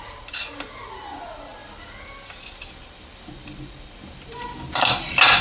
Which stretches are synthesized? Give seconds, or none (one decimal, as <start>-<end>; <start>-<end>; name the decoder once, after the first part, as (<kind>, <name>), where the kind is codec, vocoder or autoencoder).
none